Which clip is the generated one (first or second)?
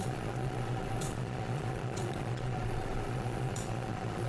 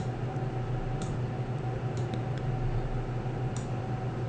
first